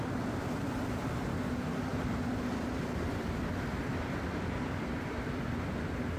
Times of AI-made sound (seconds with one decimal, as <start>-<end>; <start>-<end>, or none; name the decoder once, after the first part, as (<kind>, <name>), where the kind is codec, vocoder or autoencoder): 1.9-3.9 (vocoder, BigVGAN v2)